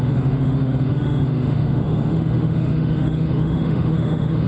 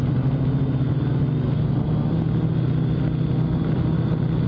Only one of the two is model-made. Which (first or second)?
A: first